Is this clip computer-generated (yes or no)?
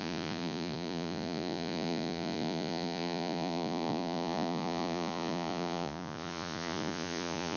yes